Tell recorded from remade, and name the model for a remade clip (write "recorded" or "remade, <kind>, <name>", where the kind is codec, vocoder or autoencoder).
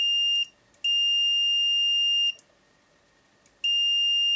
recorded